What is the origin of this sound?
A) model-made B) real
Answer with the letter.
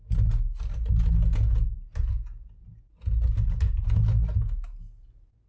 B